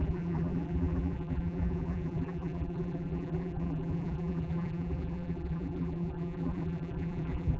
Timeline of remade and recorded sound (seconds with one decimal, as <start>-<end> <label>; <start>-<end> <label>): 0.0-7.6 remade